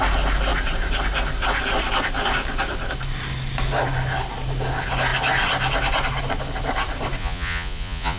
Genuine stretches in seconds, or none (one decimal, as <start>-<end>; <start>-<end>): 0.0-7.2